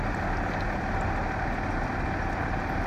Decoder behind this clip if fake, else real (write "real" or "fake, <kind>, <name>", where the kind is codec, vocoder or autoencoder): real